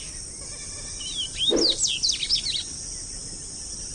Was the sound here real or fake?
real